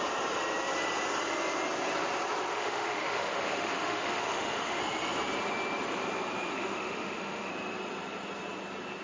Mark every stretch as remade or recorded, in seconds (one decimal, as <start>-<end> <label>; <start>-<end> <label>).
0.0-2.5 recorded; 2.5-4.8 remade; 4.8-6.5 recorded; 6.5-7.5 remade; 7.5-9.0 recorded